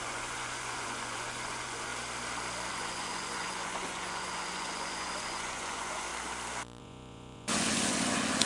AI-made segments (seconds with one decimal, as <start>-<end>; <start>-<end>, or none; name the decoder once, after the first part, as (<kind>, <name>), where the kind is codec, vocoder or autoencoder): 0.0-1.9 (vocoder, Vocos); 2.7-6.1; 6.8-8.5